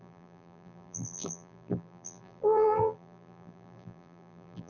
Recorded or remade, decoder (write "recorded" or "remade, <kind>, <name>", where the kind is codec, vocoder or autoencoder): remade, vocoder, BigVGAN v2